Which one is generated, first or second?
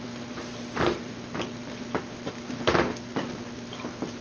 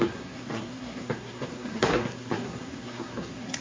second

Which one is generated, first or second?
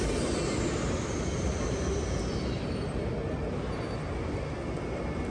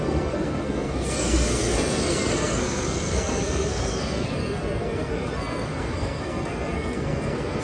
second